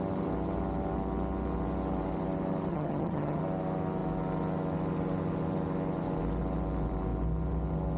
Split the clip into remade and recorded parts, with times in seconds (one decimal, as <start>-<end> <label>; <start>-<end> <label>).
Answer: 0.0-2.7 recorded; 2.7-3.4 remade; 3.4-8.0 recorded